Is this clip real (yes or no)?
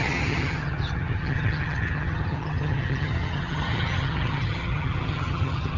no